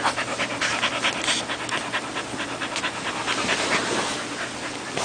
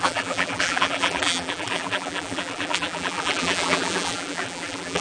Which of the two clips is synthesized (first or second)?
second